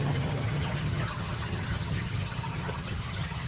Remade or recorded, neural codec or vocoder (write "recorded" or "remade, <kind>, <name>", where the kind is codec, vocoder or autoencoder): remade, vocoder, HiFi-GAN